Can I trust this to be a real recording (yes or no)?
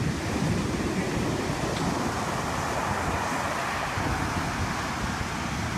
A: yes